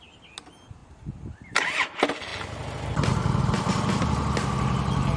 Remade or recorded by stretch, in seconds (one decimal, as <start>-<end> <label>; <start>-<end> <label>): 0.0-5.2 recorded